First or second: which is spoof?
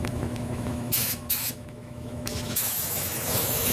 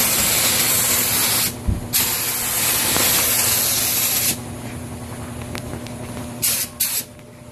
first